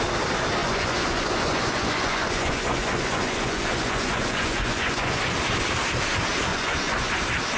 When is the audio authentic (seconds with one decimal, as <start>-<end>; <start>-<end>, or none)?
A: 0.0-0.6; 5.2-6.5; 7.1-7.6